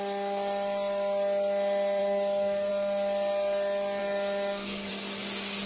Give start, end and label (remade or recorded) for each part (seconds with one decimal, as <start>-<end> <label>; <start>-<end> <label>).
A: 0.0-2.0 recorded; 2.0-2.7 remade; 2.7-4.0 recorded; 4.0-4.9 remade; 4.9-5.7 recorded